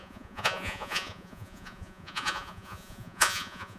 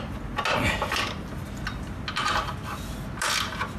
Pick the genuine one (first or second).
second